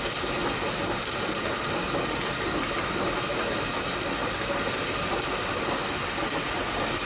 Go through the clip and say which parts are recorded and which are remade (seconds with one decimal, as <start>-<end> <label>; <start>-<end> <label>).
0.0-7.1 recorded